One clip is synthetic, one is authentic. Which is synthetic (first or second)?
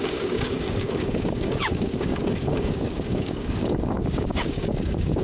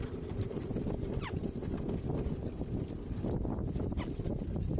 first